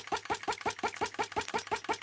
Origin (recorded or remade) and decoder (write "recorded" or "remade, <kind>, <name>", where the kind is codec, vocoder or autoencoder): recorded